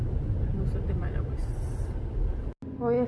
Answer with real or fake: real